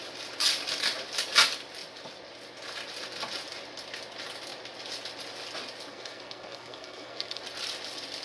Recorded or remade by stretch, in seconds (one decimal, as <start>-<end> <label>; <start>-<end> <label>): 0.0-5.9 recorded; 5.9-7.4 remade; 7.4-8.2 recorded